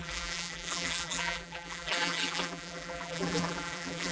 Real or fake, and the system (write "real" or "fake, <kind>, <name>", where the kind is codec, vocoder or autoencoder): fake, vocoder, BigVGAN v2